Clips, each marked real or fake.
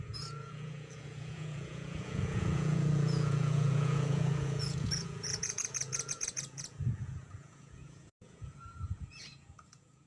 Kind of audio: fake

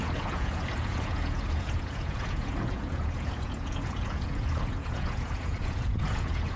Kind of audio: fake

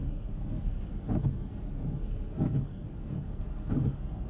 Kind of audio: fake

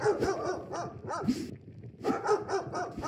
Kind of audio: real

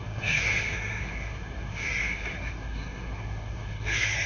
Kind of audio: fake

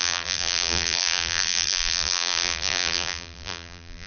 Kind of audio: fake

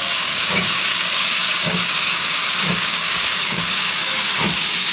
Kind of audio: fake